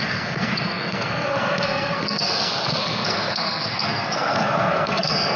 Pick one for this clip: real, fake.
fake